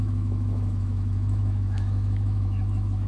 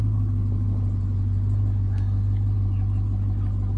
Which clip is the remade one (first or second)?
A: first